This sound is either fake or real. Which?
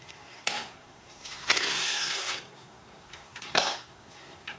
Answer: fake